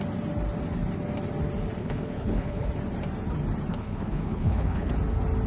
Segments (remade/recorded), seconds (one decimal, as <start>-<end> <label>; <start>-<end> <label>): 0.0-1.8 recorded; 1.8-2.7 remade; 2.7-3.7 recorded; 3.7-4.9 remade; 4.9-5.5 recorded